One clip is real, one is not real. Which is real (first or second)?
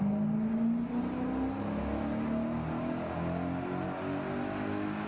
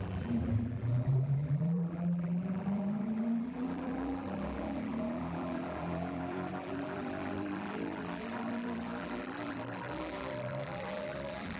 first